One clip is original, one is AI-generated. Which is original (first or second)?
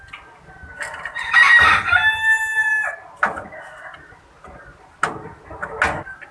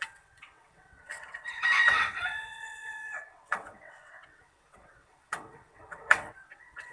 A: first